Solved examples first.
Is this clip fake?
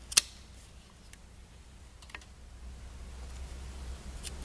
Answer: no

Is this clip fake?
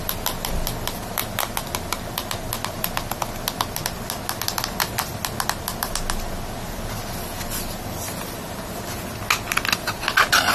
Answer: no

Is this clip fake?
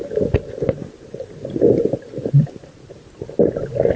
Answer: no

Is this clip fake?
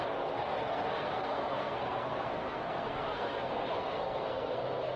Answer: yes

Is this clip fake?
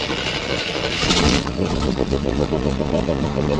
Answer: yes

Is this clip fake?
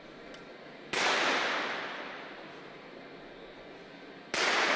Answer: no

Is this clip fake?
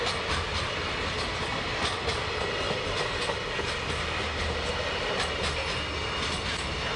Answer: no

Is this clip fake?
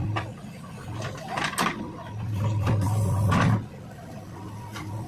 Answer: no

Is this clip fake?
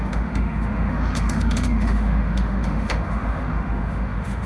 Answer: yes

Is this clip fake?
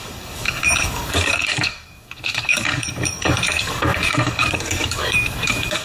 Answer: yes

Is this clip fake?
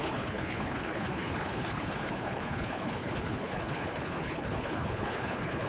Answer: yes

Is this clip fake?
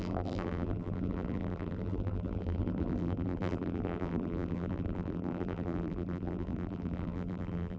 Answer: yes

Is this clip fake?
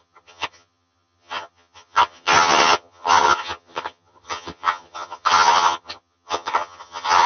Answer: yes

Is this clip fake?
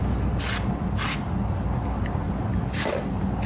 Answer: no